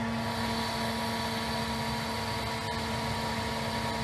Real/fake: real